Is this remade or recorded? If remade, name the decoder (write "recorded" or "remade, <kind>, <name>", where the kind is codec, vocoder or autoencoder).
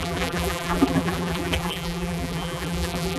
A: remade, vocoder, BigVGAN v2